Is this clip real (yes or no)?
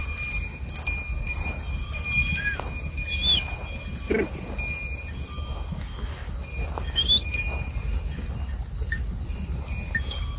yes